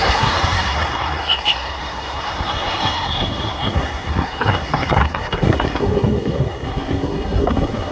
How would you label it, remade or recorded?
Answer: remade